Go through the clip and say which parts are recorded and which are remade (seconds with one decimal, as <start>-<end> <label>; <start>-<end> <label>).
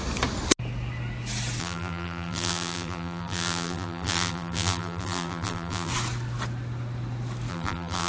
0.0-1.6 recorded; 1.6-5.9 remade; 5.9-7.5 recorded; 7.5-8.1 remade